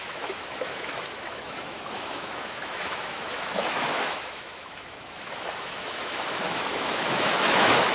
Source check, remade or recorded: remade